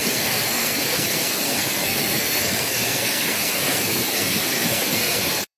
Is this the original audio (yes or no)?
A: no